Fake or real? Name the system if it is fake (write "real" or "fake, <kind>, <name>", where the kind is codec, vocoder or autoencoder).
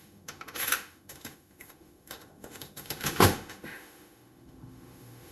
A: fake, autoencoder, DAC-VAE